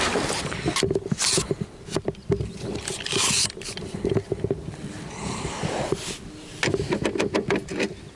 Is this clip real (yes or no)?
yes